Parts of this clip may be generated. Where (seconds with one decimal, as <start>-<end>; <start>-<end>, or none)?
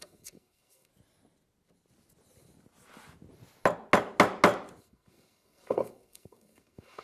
0.0-0.9; 4.8-7.0